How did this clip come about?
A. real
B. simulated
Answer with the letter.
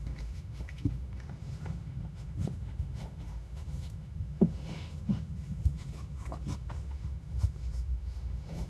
B